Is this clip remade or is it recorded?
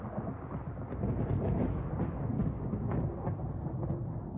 recorded